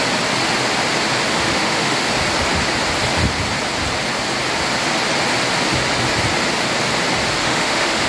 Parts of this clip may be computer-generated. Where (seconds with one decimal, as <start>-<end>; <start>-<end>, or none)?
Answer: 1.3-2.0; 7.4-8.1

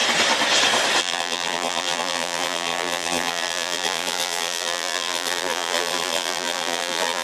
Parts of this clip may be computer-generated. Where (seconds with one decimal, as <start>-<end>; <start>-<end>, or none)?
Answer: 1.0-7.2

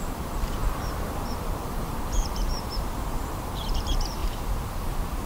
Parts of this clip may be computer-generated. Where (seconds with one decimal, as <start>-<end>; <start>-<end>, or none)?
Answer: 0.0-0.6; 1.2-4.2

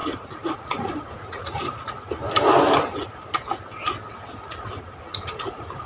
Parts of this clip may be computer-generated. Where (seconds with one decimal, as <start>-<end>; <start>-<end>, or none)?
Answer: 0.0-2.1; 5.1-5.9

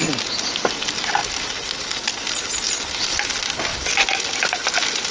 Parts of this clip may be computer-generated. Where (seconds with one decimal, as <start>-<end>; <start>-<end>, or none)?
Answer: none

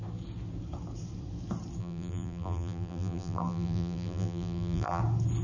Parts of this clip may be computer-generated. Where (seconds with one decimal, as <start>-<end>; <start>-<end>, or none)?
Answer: 1.8-5.0

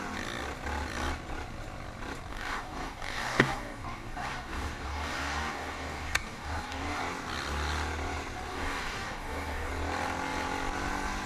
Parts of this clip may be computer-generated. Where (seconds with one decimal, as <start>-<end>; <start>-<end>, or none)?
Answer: 2.3-7.0; 8.5-9.7

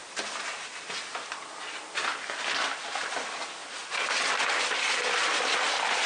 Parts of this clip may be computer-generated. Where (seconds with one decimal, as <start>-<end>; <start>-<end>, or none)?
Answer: 0.0-2.4; 3.6-4.8